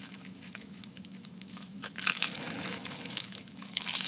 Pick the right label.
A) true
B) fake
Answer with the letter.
B